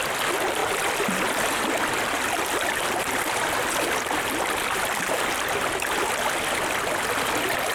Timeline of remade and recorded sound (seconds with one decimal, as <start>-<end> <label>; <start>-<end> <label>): 0.0-0.6 recorded; 0.6-5.2 remade; 5.2-7.7 recorded